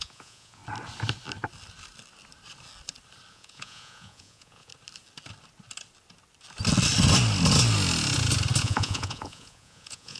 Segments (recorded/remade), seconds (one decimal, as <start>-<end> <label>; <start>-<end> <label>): 0.0-0.6 remade; 0.6-3.3 recorded; 3.3-4.7 remade; 4.7-8.6 recorded; 8.6-10.2 remade